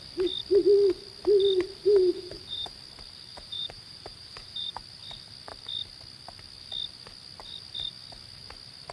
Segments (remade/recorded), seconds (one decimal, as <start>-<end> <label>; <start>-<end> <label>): 0.0-1.8 recorded; 1.8-2.7 remade; 2.7-3.3 recorded; 3.3-4.8 remade; 4.8-8.9 recorded